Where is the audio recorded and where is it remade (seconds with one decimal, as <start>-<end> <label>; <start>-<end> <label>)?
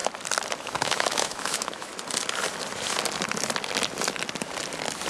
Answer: 0.0-0.6 recorded; 0.6-1.9 remade; 1.9-5.1 recorded